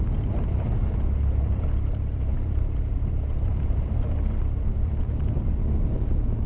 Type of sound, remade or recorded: remade